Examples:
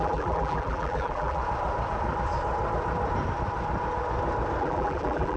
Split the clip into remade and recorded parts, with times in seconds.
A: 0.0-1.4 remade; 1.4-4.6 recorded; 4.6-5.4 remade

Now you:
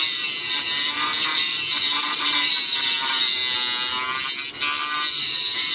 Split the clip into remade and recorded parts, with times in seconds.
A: 0.0-3.4 remade; 3.4-5.1 recorded; 5.1-5.7 remade

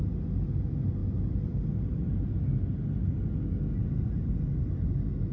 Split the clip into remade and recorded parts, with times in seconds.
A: 0.0-1.0 recorded; 1.0-2.5 remade; 2.5-3.8 recorded; 3.8-4.4 remade; 4.4-5.3 recorded